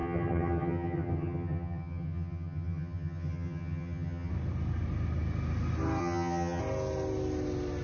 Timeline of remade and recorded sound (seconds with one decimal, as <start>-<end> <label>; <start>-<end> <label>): 0.0-4.3 remade; 4.3-6.0 recorded; 6.0-6.6 remade; 6.6-7.8 recorded